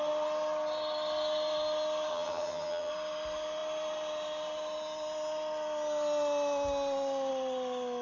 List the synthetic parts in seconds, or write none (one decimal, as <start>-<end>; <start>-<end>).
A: 2.1-2.9